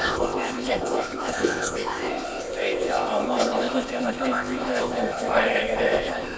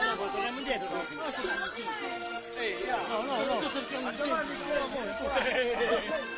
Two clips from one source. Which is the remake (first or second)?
first